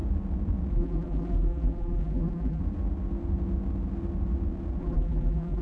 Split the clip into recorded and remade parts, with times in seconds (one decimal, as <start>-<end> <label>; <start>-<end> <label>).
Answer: 0.0-0.7 recorded; 0.7-2.6 remade; 2.6-4.8 recorded; 4.8-5.6 remade